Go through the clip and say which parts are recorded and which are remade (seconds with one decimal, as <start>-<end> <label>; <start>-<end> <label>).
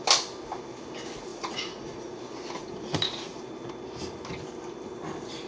0.0-1.3 recorded; 1.3-2.2 remade; 2.2-2.6 recorded; 2.6-3.4 remade; 3.4-5.5 recorded